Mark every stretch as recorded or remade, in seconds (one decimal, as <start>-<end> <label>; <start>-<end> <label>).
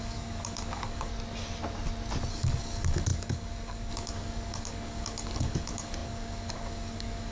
0.0-1.1 remade; 1.1-2.3 recorded; 2.3-7.3 remade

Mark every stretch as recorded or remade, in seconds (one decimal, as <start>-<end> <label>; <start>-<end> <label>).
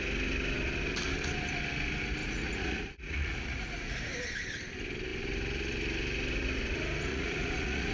0.0-2.2 recorded; 2.2-4.1 remade; 4.1-7.1 recorded; 7.1-7.9 remade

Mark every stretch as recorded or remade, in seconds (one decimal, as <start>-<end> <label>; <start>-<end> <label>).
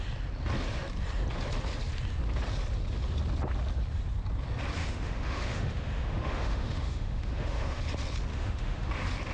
0.0-4.8 recorded; 4.8-7.8 remade; 7.8-8.3 recorded; 8.3-8.9 remade; 8.9-9.3 recorded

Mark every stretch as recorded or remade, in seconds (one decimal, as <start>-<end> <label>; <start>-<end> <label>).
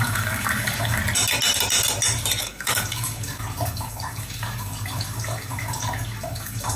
0.0-1.0 remade; 1.0-2.4 recorded; 2.4-6.8 remade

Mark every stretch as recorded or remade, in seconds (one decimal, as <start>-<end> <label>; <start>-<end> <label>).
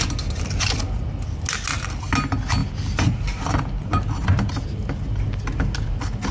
0.0-6.3 recorded